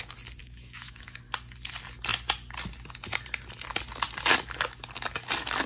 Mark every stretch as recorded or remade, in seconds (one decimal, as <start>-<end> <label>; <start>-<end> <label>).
0.0-0.4 recorded; 0.4-1.2 remade; 1.2-5.7 recorded